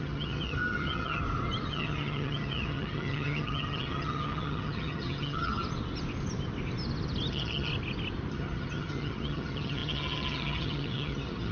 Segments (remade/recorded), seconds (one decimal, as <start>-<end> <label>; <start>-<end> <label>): 0.0-1.2 remade; 1.2-1.7 recorded; 1.7-5.6 remade; 5.6-7.3 recorded; 7.3-7.7 remade; 7.7-8.3 recorded; 8.3-11.5 remade